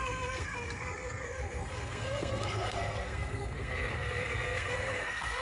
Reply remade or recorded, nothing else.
remade